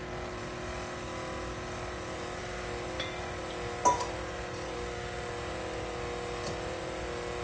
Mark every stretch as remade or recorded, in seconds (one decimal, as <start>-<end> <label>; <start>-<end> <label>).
0.0-7.4 recorded